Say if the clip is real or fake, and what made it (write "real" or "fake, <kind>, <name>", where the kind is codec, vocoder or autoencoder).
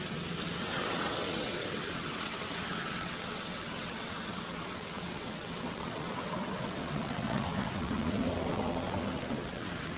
fake, vocoder, WaveNeXt